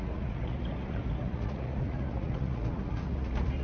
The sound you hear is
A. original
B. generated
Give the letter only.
B